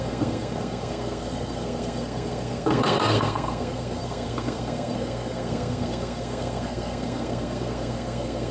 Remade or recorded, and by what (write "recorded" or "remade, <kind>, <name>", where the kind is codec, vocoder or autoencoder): remade, codec, SNAC